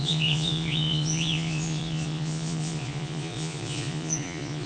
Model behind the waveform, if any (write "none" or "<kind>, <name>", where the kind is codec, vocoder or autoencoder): vocoder, Vocos